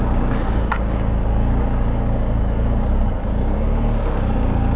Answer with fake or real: fake